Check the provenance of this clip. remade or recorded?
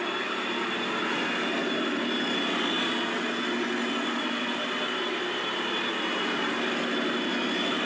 recorded